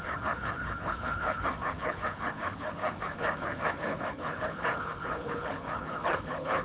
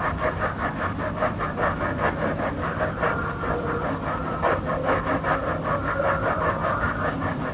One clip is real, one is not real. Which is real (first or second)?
second